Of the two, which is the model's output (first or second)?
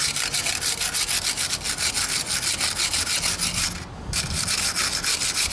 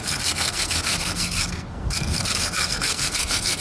second